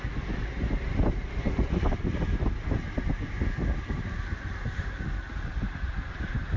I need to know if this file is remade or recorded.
recorded